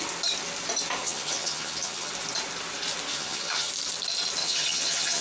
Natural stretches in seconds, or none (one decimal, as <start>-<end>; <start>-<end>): 0.0-1.0; 2.1-3.1; 3.7-4.4